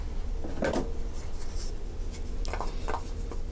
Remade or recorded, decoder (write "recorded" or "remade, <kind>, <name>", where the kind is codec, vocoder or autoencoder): recorded